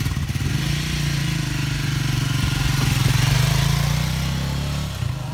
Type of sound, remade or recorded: recorded